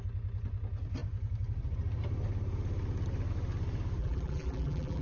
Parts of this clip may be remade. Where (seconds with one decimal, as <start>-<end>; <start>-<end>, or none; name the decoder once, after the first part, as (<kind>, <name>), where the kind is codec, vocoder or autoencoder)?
4.0-5.0 (vocoder, BigVGAN v2)